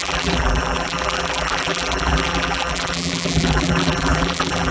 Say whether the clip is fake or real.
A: fake